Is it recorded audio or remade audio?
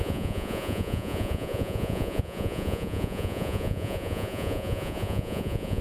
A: remade